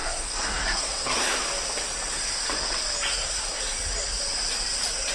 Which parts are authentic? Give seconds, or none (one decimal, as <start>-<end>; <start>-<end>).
1.4-3.1; 3.6-5.1